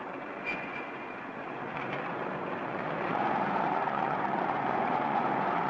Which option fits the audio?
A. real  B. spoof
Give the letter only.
B